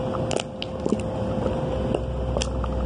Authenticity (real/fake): real